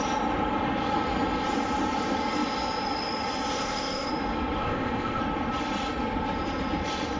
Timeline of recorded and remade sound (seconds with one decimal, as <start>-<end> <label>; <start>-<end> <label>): 0.0-3.5 recorded; 3.5-4.1 remade; 4.1-4.6 recorded; 4.6-5.2 remade; 5.2-7.2 recorded